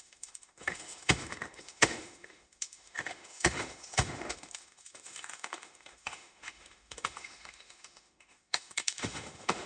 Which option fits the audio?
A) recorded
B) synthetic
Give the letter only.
B